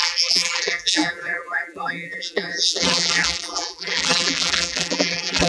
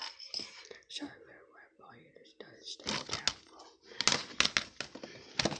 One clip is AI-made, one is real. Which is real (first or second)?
second